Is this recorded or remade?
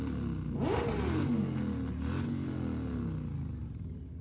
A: recorded